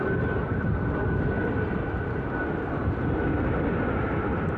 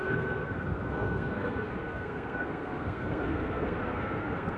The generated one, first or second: second